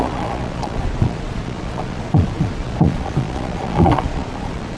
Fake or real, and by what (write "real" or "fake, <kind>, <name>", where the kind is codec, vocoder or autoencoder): fake, vocoder, Vocos